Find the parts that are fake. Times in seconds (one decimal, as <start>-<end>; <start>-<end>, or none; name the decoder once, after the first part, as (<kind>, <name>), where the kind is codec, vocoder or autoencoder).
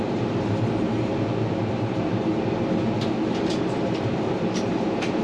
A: 0.0-1.1 (vocoder, BigVGAN v2); 1.7-2.3; 3.3-5.2